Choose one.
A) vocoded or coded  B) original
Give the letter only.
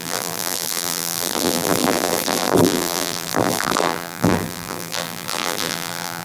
A